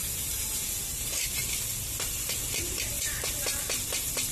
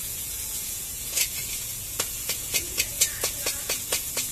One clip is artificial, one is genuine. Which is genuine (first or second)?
first